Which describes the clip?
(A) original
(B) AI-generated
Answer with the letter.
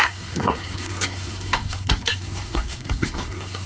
B